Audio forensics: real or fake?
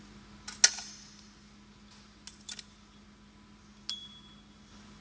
real